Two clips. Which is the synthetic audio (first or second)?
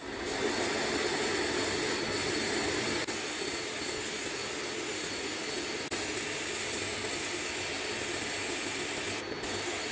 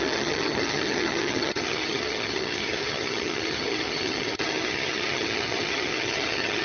second